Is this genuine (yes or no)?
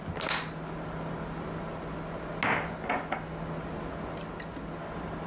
yes